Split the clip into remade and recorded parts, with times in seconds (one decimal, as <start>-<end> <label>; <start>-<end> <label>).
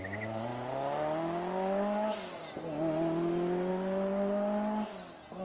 0.0-5.4 recorded